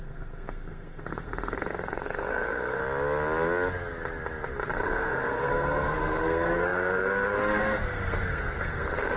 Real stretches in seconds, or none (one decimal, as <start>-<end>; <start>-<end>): 2.8-4.7

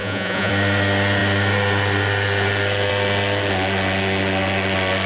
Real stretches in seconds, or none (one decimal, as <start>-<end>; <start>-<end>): 0.5-5.1

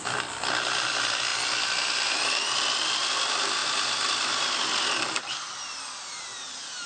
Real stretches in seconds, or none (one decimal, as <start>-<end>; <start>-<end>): 3.6-5.2; 6.3-6.9

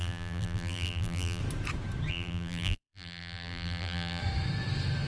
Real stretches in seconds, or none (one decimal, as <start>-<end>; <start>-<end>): 1.4-2.1; 4.2-5.1

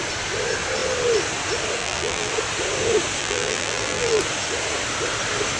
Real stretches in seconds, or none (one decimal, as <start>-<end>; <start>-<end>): 0.0-1.8; 2.3-3.2; 4.2-5.6

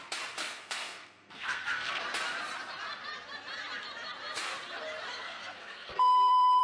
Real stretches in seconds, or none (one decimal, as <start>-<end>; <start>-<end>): 0.0-0.4; 2.0-5.1

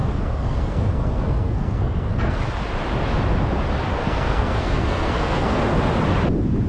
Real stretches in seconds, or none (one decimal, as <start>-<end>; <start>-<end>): 2.4-3.9; 5.6-6.7